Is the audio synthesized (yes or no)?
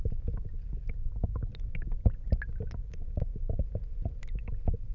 no